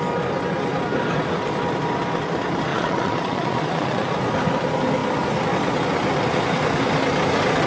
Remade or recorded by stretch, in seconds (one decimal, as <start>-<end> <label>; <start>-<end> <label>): 0.0-2.7 recorded; 2.7-4.1 remade; 4.1-7.7 recorded